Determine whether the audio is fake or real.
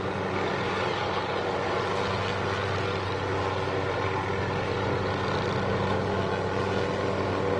real